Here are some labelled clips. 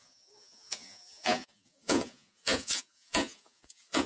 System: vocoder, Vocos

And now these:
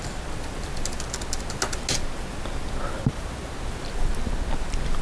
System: none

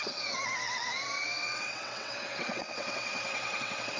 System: vocoder, WaveNeXt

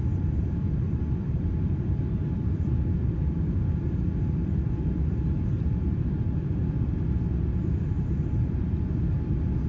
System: vocoder, BigVGAN v2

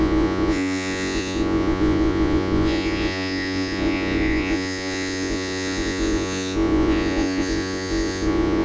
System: vocoder, Vocos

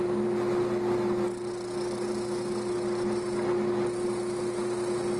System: none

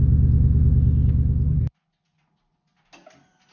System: none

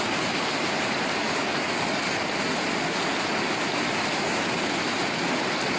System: none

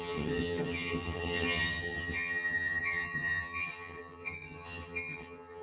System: vocoder, HiFi-GAN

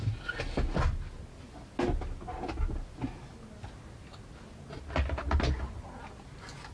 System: none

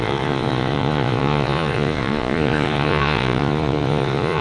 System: vocoder, Vocos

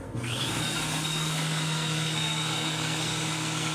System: codec, SNAC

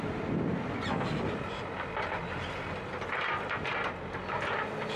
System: none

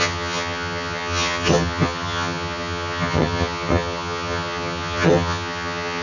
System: vocoder, HiFi-GAN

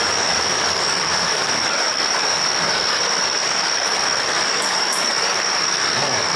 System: codec, DAC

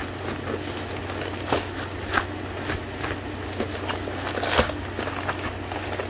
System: none